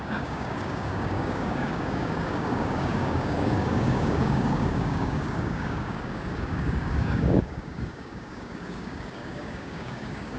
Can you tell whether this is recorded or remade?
remade